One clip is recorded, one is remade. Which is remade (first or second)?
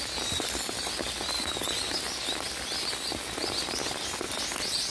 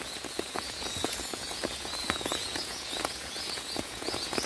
second